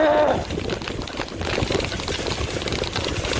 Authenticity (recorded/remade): recorded